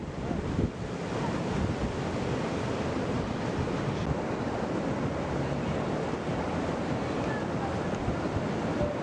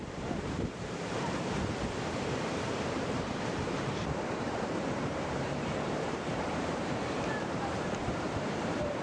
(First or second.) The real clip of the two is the first